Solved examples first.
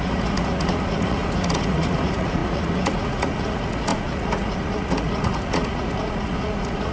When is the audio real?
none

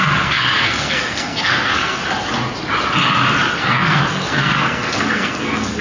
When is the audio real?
2.0-3.6